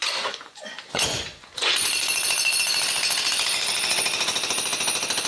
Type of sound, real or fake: fake